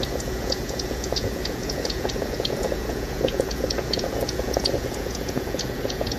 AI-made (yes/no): yes